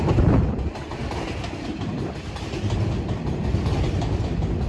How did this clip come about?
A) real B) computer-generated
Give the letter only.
A